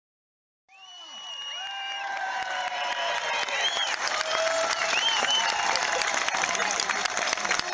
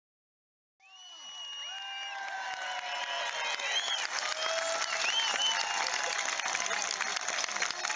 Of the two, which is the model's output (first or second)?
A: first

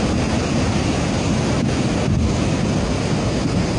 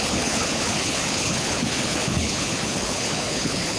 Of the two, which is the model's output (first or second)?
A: second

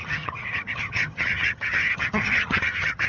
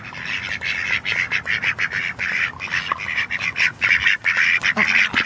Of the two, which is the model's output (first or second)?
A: first